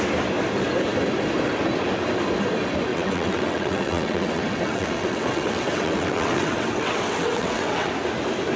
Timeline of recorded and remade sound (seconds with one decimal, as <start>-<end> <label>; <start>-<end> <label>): 0.0-2.9 recorded; 2.9-7.9 remade; 7.9-8.6 recorded